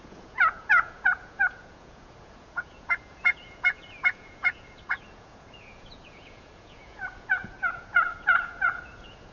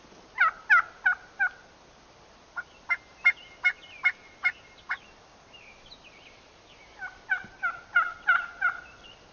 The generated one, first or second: first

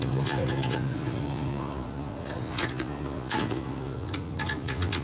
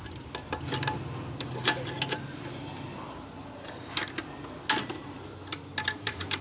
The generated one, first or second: first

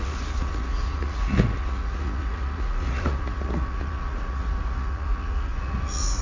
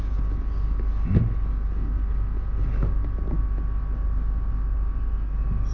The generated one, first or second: first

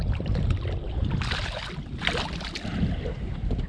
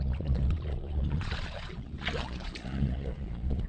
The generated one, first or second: second